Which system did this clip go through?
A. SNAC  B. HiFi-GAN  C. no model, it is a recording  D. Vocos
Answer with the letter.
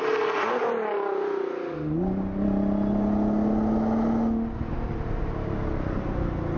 C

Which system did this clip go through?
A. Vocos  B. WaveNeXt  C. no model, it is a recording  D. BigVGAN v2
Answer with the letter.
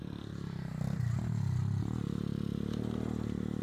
C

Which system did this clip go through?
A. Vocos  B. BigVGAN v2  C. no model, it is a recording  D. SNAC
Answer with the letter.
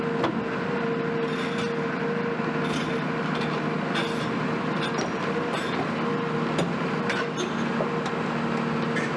C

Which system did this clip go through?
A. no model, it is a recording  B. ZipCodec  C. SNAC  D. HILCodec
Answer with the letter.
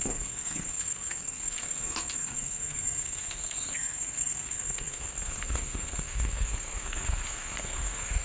C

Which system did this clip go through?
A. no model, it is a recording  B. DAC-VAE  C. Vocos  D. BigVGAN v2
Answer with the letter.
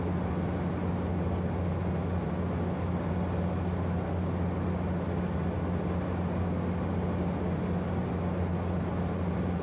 A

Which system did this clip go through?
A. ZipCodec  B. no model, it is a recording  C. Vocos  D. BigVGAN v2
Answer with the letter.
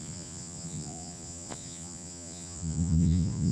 C